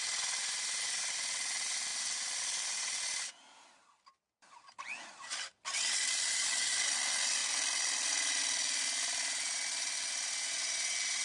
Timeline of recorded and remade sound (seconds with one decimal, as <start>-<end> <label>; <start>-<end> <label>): 0.0-11.2 recorded